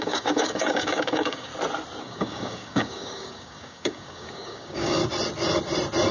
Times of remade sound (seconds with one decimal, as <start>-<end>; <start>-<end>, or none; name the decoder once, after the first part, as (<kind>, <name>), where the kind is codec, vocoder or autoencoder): 0.0-1.5 (codec, DAC); 2.0-5.0